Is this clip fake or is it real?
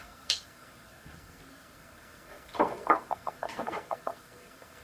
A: fake